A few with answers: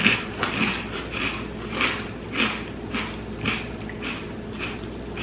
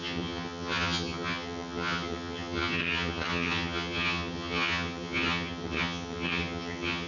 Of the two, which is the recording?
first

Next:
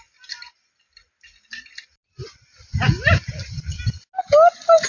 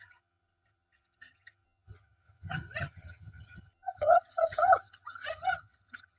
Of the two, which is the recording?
first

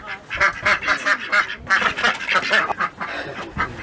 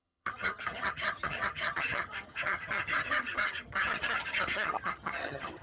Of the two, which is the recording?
first